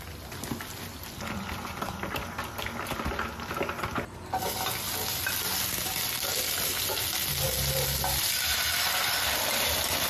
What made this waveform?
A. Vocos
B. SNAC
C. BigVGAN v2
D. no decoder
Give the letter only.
D